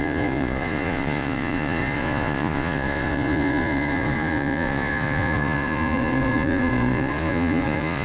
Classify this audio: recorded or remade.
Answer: remade